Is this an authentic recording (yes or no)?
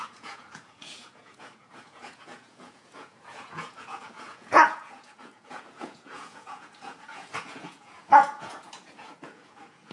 no